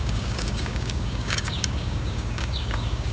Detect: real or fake fake